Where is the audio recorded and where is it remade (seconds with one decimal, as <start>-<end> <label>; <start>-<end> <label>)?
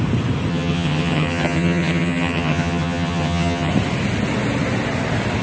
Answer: 0.0-0.5 recorded; 0.5-3.7 remade; 3.7-5.4 recorded